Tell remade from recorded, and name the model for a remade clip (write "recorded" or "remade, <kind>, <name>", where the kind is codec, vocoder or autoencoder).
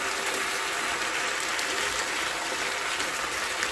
recorded